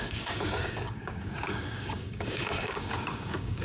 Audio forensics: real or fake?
fake